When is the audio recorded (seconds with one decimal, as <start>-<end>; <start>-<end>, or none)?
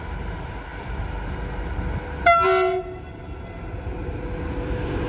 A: 0.0-5.1